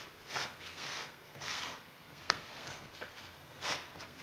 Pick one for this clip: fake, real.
fake